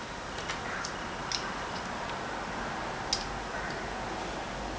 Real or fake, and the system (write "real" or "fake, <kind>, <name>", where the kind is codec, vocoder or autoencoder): real